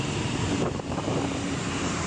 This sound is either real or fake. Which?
fake